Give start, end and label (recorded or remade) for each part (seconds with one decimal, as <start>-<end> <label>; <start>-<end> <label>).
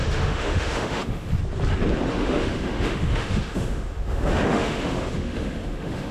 0.0-1.3 remade; 1.3-2.1 recorded; 2.1-6.1 remade